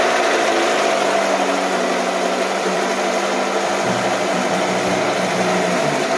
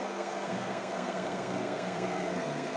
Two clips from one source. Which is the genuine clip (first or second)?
first